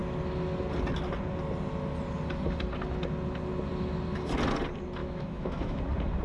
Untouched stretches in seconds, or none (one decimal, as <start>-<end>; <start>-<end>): 0.0-5.0; 5.8-6.2